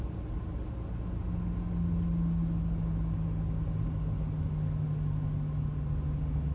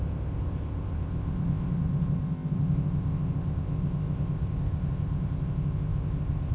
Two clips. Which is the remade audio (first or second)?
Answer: second